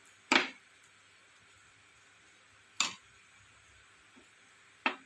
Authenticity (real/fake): real